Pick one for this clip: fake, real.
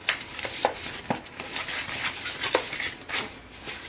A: real